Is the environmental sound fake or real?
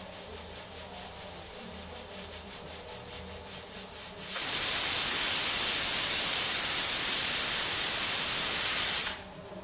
real